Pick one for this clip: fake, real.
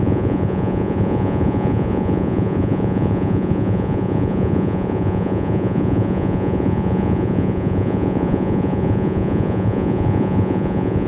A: fake